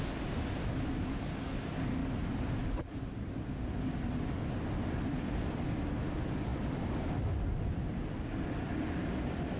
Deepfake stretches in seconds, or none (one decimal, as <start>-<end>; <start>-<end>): none